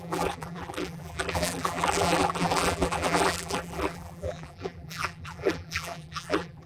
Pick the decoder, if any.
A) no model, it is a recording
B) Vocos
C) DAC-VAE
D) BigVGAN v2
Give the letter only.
D